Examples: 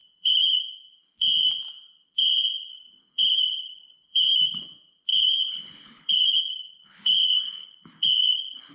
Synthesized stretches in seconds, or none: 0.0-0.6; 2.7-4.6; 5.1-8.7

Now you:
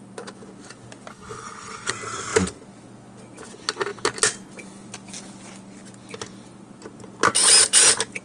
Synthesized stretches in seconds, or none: 1.1-1.9

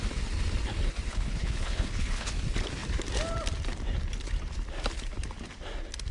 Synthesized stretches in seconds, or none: 1.1-2.3

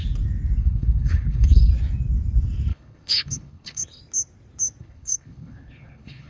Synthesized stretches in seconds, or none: 0.6-1.7; 2.7-4.0; 4.8-6.3

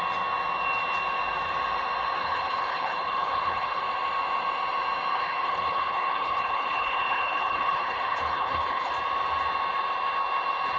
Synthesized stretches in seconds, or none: 2.2-3.8; 5.1-8.9